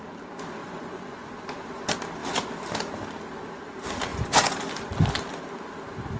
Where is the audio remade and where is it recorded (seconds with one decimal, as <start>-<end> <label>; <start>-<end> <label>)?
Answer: 0.0-0.6 recorded; 0.6-1.3 remade; 1.3-4.1 recorded; 4.1-4.7 remade; 4.7-6.2 recorded